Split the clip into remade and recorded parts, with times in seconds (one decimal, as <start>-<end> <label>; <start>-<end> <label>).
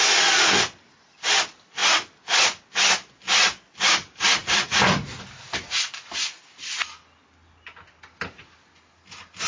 0.0-9.5 recorded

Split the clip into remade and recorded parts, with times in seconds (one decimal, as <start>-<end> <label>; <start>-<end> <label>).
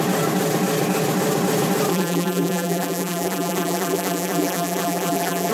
0.0-1.9 recorded; 1.9-5.5 remade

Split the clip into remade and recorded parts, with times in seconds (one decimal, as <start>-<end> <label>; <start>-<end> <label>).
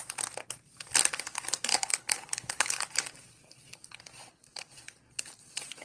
0.0-1.7 recorded; 1.7-2.9 remade; 2.9-5.8 recorded